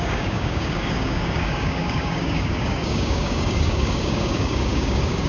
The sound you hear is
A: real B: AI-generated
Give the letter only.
B